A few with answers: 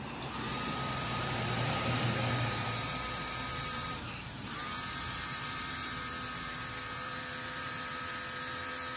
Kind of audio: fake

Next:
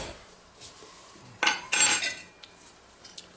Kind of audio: real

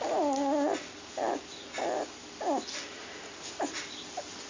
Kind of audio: real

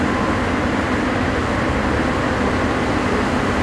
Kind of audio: real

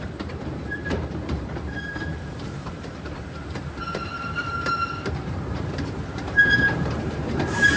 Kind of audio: fake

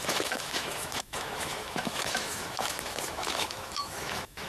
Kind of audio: fake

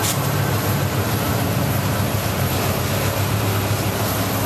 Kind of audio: fake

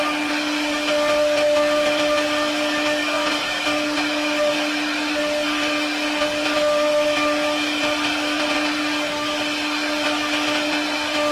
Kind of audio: real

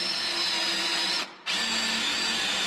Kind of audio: real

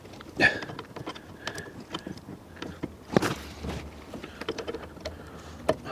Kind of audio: real